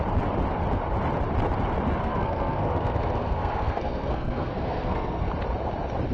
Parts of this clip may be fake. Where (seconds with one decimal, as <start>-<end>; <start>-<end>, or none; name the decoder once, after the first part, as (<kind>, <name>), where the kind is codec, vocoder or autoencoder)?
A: 2.0-5.3 (codec, SNAC)